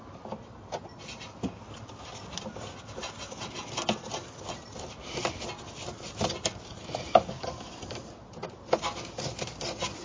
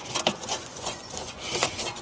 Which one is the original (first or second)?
first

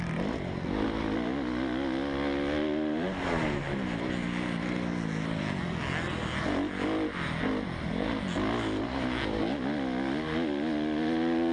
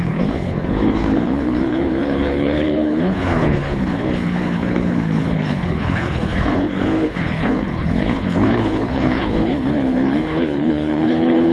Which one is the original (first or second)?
first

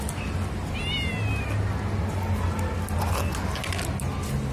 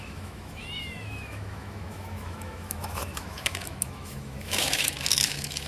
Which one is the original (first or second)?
first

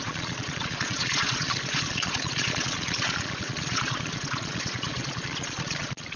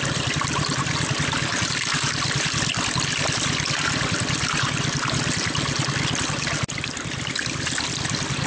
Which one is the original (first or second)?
second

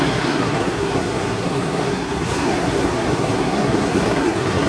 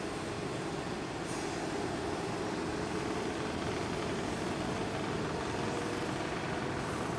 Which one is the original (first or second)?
second